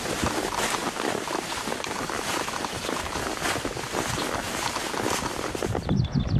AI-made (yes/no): no